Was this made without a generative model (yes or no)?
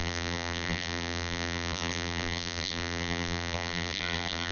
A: no